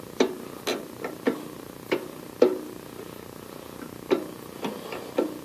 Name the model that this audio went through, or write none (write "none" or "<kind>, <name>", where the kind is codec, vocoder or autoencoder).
none